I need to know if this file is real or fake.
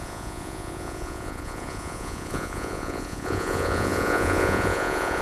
fake